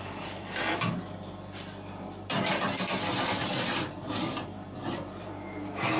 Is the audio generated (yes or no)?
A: yes